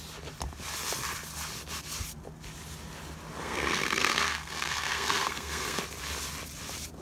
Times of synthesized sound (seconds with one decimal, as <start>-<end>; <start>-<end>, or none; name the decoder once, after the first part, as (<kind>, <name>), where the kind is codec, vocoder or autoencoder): 3.4-5.8 (codec, SNAC)